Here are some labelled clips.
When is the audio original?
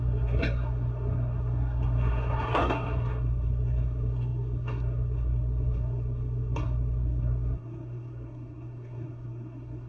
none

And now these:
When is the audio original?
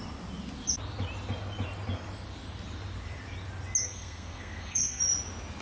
0.0-3.8; 5.0-5.6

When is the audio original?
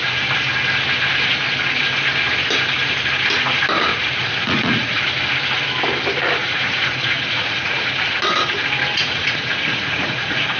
0.0-3.9; 5.0-6.4; 8.2-8.9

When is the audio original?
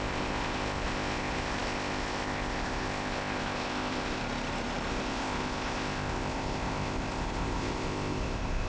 4.2-4.9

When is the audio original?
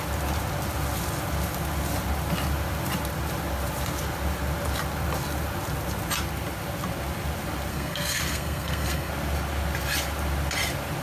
0.0-7.7; 9.1-11.0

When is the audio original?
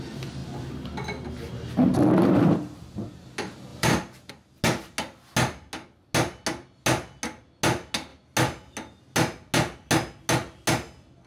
0.0-3.7; 4.3-11.3